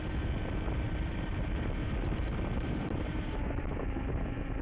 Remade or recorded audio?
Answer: remade